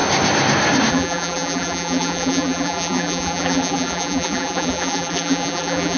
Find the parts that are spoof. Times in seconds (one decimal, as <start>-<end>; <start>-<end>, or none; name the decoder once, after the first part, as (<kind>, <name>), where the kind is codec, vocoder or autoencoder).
0.9-6.0 (vocoder, BigVGAN v2)